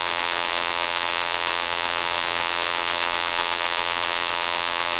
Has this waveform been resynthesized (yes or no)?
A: yes